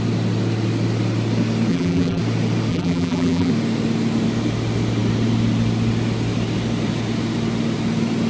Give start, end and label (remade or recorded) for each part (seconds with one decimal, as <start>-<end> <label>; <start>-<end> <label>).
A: 0.0-1.7 recorded; 1.7-2.2 remade; 2.2-2.7 recorded; 2.7-3.5 remade; 3.5-8.3 recorded

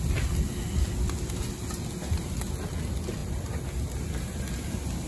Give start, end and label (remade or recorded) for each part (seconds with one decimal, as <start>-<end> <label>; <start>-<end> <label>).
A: 0.0-5.1 recorded